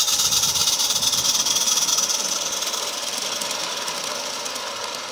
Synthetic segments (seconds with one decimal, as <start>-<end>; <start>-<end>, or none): 0.6-3.7